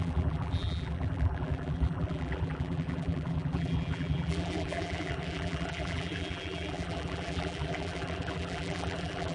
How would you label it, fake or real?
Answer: fake